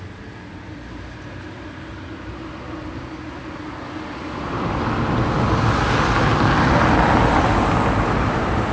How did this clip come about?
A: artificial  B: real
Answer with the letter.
B